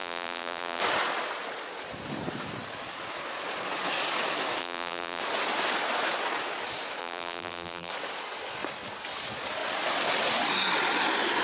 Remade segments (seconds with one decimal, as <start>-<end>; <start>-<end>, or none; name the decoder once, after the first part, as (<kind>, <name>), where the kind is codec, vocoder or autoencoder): 0.0-0.8 (vocoder, BigVGAN v2); 4.6-5.2; 7.0-7.9